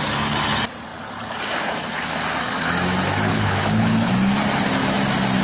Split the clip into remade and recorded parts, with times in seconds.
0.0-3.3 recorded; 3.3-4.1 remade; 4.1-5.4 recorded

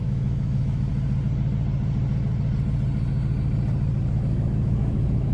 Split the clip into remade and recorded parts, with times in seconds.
0.0-0.9 remade; 0.9-4.1 recorded; 4.1-5.3 remade

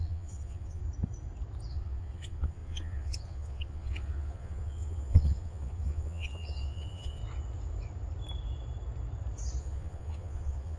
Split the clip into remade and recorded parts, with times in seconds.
0.0-0.8 remade; 0.8-1.7 recorded; 1.7-7.2 remade; 7.2-9.6 recorded; 9.6-10.8 remade

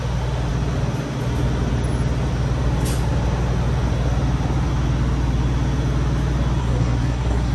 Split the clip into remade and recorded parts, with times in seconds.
0.0-6.6 recorded; 6.6-7.5 remade

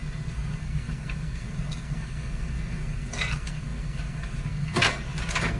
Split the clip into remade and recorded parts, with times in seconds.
0.0-5.6 remade

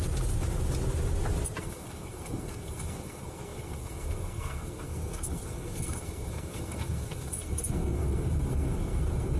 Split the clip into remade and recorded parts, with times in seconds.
0.0-1.6 recorded; 1.6-9.4 remade

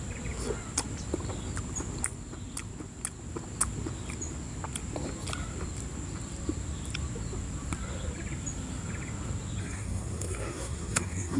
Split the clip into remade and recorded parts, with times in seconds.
0.0-9.6 recorded; 9.6-11.4 remade